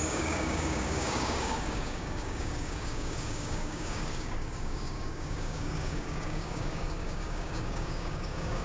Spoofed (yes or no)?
yes